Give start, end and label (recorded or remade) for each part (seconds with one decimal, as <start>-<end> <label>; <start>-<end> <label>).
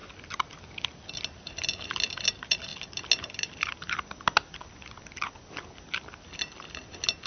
0.0-7.3 recorded